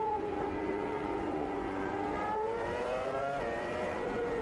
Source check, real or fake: fake